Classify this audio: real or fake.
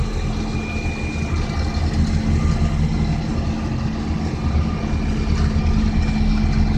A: real